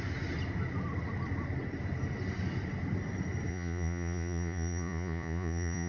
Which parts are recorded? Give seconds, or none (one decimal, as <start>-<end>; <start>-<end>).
0.0-3.5